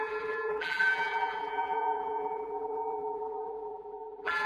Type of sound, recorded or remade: remade